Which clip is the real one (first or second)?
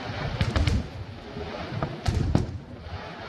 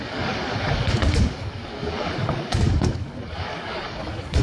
first